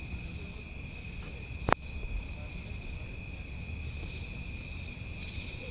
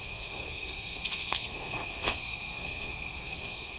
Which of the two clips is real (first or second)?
first